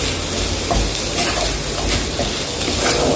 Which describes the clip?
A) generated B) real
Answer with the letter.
B